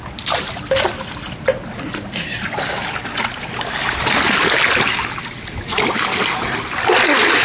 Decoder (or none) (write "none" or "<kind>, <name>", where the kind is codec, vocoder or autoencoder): none